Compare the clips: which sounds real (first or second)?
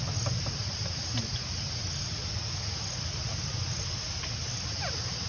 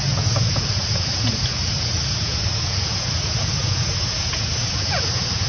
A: first